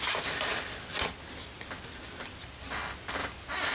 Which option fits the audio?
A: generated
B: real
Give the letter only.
B